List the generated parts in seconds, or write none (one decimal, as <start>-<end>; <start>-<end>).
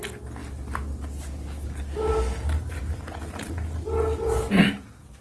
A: none